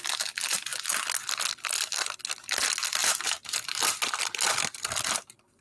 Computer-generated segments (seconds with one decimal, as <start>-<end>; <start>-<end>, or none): 3.0-3.8